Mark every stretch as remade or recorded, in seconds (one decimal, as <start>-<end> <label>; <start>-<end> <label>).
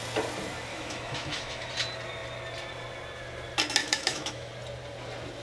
0.0-0.7 recorded; 0.7-1.7 remade; 1.7-3.8 recorded; 3.8-4.5 remade; 4.5-5.4 recorded